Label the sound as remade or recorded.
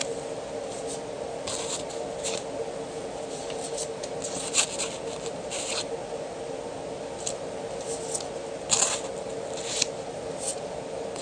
recorded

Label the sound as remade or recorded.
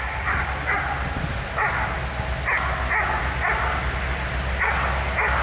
recorded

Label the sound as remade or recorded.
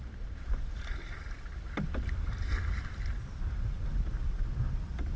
recorded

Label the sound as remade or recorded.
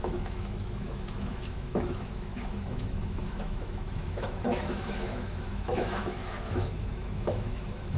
remade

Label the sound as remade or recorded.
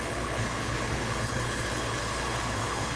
remade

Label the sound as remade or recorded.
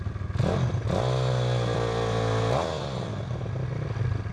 recorded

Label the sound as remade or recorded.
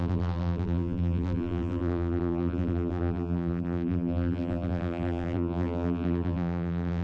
remade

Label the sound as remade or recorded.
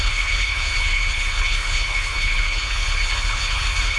remade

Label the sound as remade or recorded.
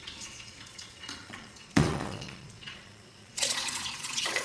remade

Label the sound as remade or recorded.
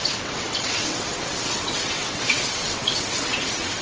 remade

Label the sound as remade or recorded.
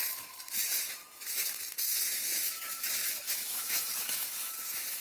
remade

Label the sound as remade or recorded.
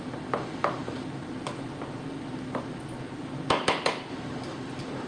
recorded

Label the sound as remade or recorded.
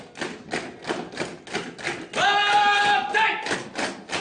recorded